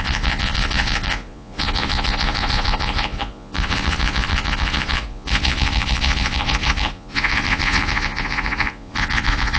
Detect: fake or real fake